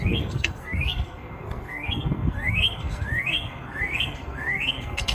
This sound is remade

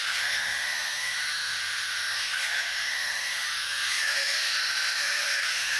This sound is remade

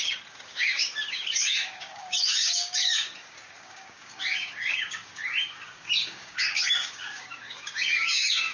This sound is remade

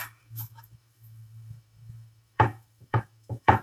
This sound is remade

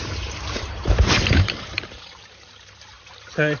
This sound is remade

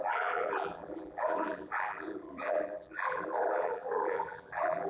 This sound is remade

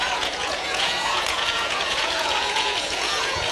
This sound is remade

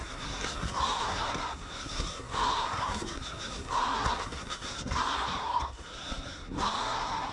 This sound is remade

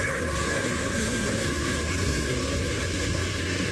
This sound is remade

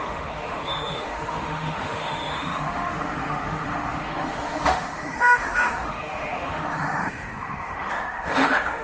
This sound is remade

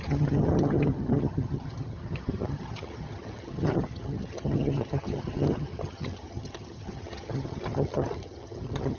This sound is remade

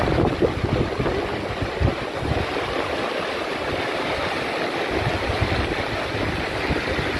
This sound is recorded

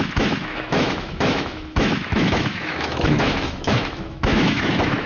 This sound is remade